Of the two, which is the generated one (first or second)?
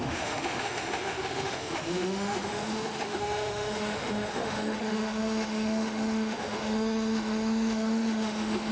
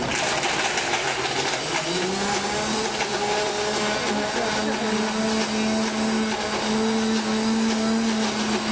first